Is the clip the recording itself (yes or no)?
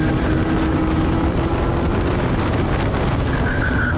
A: yes